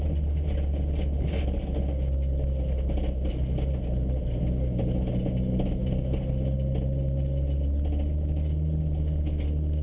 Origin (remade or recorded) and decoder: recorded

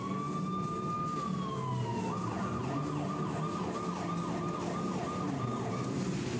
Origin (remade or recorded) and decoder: recorded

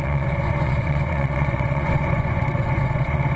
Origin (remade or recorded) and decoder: remade, vocoder, Vocos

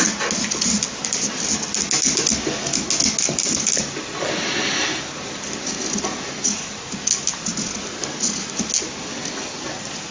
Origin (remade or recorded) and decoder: recorded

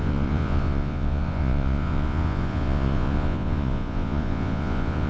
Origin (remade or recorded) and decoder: remade, vocoder, Vocos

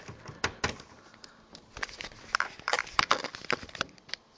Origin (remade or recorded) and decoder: recorded